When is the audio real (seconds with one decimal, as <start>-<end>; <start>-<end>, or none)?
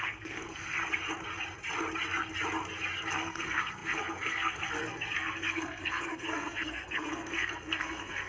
0.8-3.1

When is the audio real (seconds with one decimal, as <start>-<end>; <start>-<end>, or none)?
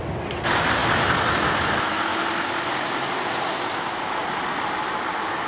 0.0-5.5